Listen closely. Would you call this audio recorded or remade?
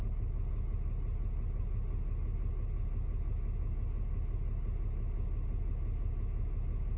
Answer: recorded